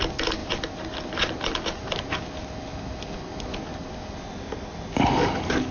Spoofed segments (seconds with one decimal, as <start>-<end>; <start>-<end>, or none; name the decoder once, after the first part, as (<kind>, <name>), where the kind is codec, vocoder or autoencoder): none